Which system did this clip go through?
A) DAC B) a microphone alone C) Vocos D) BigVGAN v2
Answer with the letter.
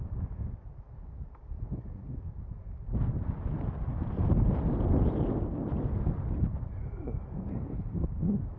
B